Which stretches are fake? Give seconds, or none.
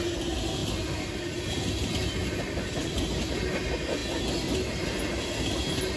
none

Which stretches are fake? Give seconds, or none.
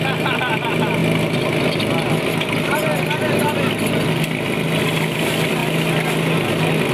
none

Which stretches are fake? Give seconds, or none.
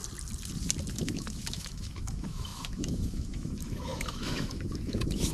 0.9-5.3 (autoencoder, DAC-VAE)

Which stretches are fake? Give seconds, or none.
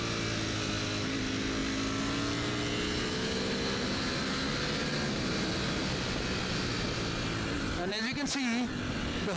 none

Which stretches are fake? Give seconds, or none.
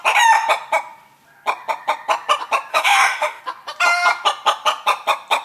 2.7-3.4 (autoencoder, DAC-VAE)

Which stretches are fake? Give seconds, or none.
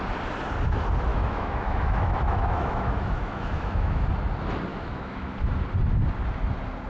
1.1-4.1 (autoencoder, DAC-VAE); 4.7-5.3